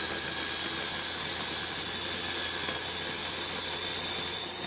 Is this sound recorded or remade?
recorded